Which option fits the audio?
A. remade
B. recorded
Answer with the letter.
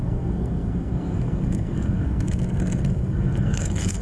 A